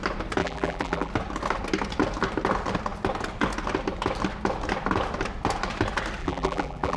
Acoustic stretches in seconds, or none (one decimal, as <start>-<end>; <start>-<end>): 0.0-0.4; 1.1-6.2